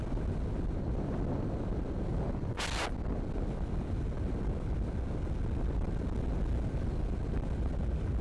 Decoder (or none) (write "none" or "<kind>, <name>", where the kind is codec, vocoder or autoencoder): none